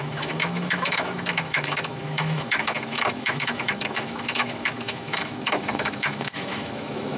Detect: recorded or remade remade